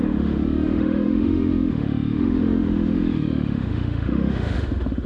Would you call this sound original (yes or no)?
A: no